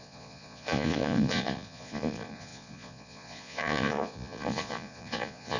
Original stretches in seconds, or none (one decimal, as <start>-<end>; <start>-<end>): none